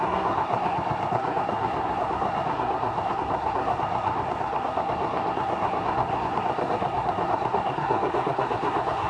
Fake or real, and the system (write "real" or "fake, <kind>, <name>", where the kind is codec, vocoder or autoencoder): fake, codec, SNAC